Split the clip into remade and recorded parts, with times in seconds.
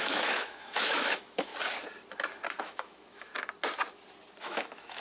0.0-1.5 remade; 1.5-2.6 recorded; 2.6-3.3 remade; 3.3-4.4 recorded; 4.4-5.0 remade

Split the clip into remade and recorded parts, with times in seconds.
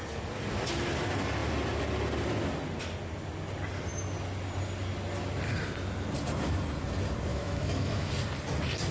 0.0-7.3 recorded; 7.3-8.1 remade; 8.1-8.9 recorded